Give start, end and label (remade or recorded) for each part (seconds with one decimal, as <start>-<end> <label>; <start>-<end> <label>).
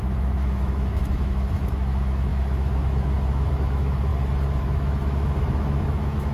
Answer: 0.0-4.1 remade; 4.1-4.6 recorded; 4.6-6.3 remade